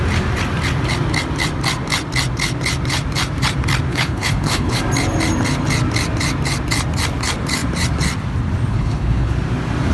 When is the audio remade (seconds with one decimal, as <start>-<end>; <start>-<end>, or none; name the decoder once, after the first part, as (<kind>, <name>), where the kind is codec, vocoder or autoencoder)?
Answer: 3.9-4.8 (codec, HILCodec); 8.7-9.3